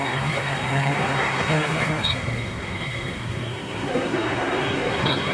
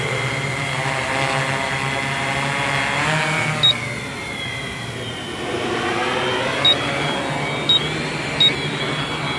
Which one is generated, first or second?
first